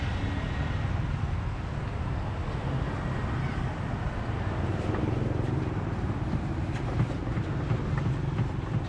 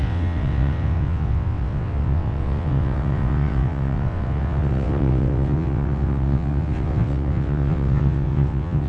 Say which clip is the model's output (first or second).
second